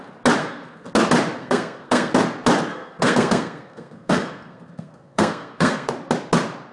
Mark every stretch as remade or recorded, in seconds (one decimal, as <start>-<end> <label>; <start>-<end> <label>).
0.0-0.4 recorded; 0.4-0.9 remade; 0.9-1.4 recorded; 1.4-2.1 remade; 2.1-2.7 recorded; 2.7-5.9 remade; 5.9-6.7 recorded